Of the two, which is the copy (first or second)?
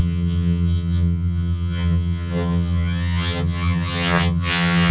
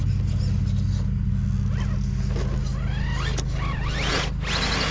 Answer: first